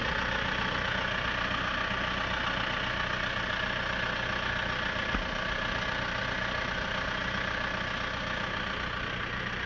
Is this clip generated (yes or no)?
no